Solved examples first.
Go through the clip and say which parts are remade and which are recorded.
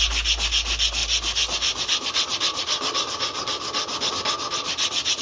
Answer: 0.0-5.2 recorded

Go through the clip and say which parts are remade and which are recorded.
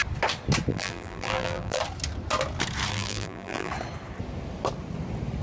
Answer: 0.0-0.7 recorded; 0.7-1.8 remade; 1.8-2.9 recorded; 2.9-3.7 remade; 3.7-5.4 recorded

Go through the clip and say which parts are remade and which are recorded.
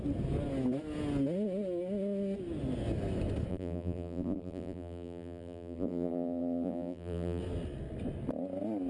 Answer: 0.0-3.5 recorded; 3.5-7.4 remade; 7.4-8.9 recorded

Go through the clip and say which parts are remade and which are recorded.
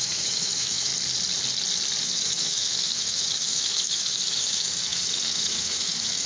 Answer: 0.0-0.9 remade; 0.9-2.0 recorded; 2.0-6.3 remade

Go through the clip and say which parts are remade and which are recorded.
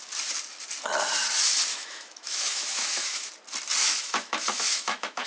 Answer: 0.0-1.7 recorded; 1.7-3.3 remade; 3.3-3.8 recorded; 3.8-5.3 remade